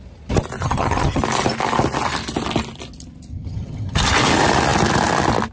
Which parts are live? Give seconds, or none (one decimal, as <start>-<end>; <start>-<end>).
0.0-0.6; 1.2-3.3; 4.0-5.5